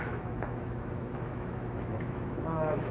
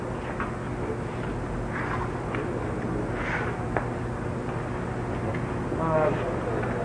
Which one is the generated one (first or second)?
first